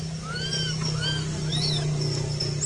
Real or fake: real